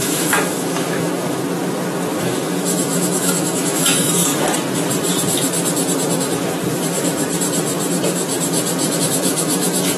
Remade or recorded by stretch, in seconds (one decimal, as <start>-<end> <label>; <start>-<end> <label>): 0.0-1.4 remade; 1.4-2.2 recorded; 2.2-4.3 remade; 4.3-9.0 recorded; 9.0-10.0 remade